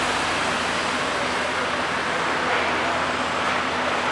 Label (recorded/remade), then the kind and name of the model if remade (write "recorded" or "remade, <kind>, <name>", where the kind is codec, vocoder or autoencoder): recorded